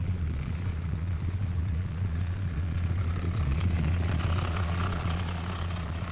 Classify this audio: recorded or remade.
remade